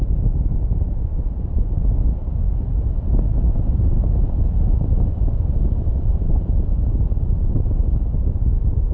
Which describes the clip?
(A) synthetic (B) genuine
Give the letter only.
B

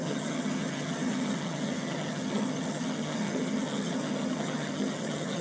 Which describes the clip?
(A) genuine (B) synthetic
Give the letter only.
B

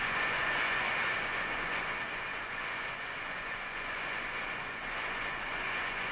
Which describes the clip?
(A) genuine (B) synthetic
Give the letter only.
B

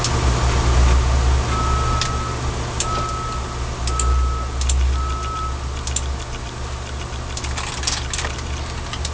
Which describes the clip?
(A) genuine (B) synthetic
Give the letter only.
A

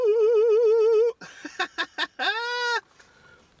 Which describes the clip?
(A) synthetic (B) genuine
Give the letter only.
B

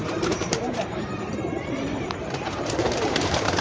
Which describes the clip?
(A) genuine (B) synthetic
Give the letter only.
B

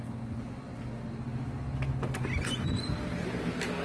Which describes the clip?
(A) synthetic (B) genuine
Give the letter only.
B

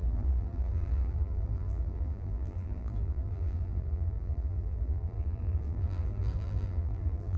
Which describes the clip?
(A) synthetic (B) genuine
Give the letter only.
A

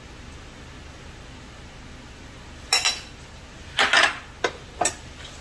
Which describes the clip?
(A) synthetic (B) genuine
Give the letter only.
B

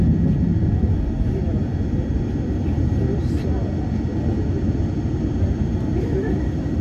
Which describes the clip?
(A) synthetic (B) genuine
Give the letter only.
B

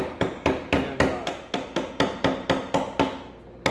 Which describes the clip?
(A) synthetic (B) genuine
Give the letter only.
B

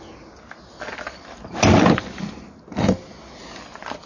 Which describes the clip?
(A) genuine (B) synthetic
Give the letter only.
A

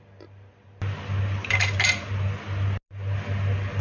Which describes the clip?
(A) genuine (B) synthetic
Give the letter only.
A